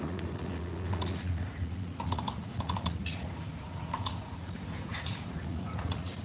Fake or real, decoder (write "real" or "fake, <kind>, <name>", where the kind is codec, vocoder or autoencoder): fake, vocoder, Vocos